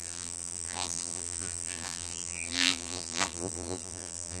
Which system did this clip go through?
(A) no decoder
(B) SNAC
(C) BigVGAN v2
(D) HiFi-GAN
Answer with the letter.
C